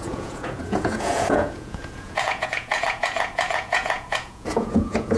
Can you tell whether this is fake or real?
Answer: fake